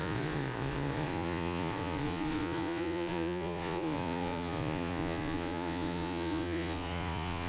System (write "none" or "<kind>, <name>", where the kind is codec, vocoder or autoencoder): vocoder, Vocos